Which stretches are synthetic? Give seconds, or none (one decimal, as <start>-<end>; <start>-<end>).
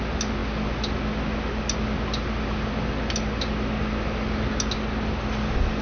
none